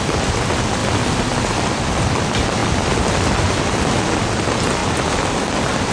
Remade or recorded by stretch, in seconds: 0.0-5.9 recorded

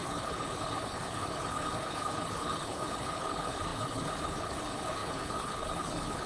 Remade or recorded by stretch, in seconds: 0.0-6.3 remade

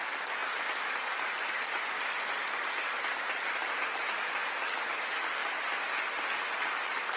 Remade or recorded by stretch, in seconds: 0.0-7.2 recorded

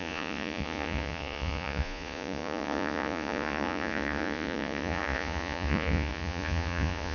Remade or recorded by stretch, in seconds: 0.0-7.1 remade

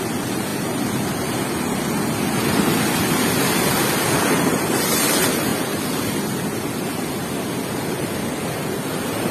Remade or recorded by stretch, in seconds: 0.0-9.3 recorded